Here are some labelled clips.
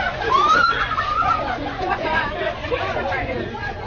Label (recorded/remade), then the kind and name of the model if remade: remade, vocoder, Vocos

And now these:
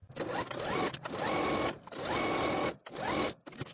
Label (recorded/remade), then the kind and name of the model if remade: recorded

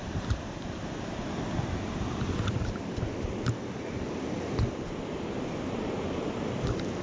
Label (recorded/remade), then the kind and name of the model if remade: recorded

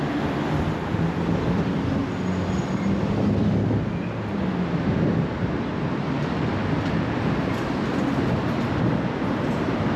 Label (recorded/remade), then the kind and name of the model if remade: recorded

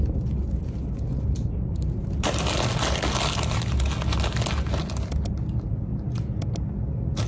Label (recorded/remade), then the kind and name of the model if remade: recorded